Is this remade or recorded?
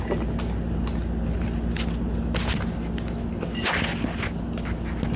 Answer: recorded